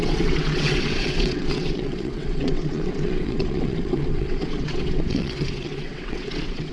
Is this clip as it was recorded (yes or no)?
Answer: no